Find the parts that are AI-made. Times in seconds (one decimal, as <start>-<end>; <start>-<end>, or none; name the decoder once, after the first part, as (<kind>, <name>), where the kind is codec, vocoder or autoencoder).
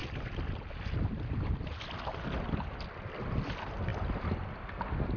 none